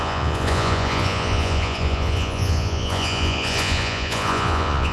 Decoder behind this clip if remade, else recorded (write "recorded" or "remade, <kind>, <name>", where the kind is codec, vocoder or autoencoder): remade, vocoder, Vocos